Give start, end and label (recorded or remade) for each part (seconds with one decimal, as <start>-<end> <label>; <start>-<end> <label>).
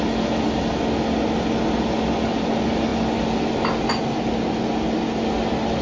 0.0-5.8 recorded